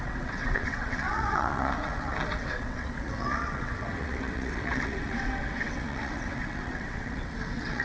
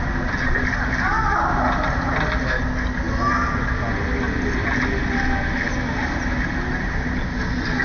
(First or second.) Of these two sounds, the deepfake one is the first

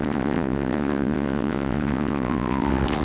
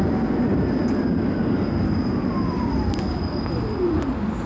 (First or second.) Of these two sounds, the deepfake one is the first